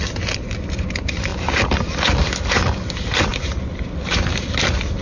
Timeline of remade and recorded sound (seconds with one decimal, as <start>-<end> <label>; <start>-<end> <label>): 0.0-5.0 recorded